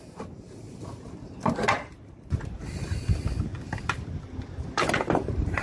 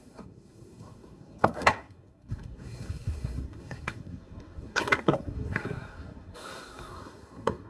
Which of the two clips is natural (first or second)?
first